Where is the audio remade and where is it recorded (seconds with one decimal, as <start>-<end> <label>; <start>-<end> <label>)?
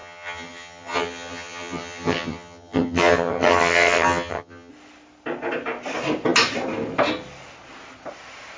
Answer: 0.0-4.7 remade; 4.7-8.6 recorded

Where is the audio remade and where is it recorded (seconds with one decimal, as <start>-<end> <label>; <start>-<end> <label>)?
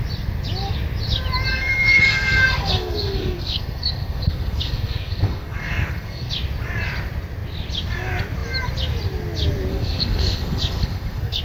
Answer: 0.0-1.5 recorded; 1.5-6.3 remade; 6.3-9.7 recorded; 9.7-11.4 remade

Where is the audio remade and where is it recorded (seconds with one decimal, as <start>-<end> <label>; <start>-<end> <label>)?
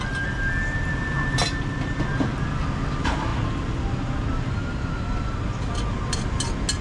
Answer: 0.0-6.8 recorded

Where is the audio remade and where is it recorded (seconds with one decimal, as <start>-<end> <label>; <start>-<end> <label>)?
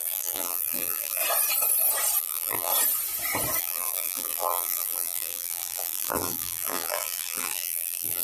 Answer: 0.0-1.2 remade; 1.2-2.2 recorded; 2.2-2.7 remade; 2.7-3.6 recorded; 3.6-8.2 remade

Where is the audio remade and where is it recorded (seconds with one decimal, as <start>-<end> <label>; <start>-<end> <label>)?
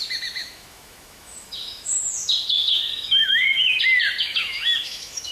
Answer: 0.0-0.4 recorded; 0.4-2.0 remade; 2.0-2.6 recorded; 2.6-3.8 remade; 3.8-4.2 recorded; 4.2-5.3 remade